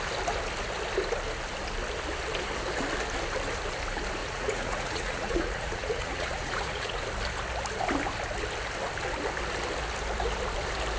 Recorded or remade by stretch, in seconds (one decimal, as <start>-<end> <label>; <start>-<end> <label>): 0.0-4.2 recorded; 4.2-7.0 remade; 7.0-11.0 recorded